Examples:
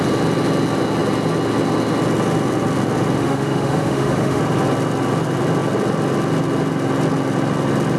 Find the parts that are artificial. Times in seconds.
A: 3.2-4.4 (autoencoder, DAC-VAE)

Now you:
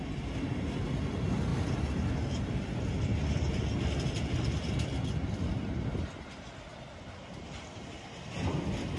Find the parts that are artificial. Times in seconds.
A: none

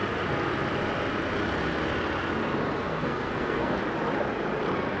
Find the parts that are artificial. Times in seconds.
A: 2.8-3.8 (codec, SNAC)

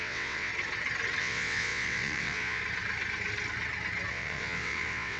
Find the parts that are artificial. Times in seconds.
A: 0.0-0.5 (vocoder, WaveNeXt); 1.2-2.6; 4.1-5.2

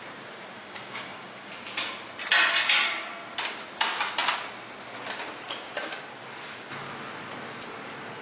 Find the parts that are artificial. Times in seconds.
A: 0.6-1.5 (codec, DAC)

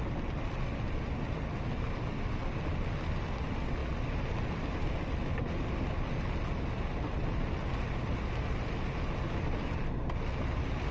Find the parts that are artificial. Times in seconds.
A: none